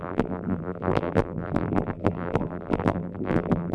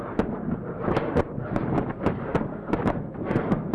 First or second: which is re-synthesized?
first